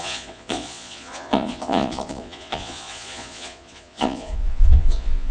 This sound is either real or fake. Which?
fake